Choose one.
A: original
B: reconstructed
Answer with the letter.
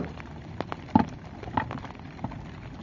B